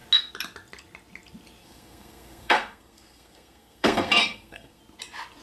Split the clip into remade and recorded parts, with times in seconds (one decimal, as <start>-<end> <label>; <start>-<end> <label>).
0.0-1.6 recorded; 1.6-4.8 remade; 4.8-5.4 recorded